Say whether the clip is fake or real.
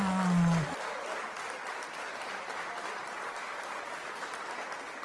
real